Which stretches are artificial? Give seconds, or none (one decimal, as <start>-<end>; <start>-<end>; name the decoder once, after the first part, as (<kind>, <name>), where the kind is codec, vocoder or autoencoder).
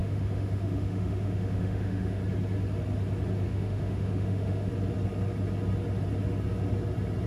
0.0-2.2 (autoencoder, DAC-VAE); 3.5-4.7